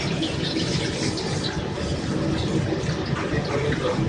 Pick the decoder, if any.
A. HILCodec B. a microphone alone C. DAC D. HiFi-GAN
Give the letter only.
B